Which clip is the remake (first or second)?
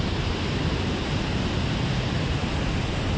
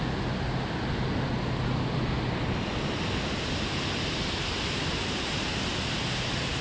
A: first